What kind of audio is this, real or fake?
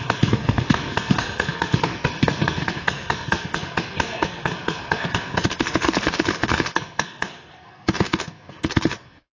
fake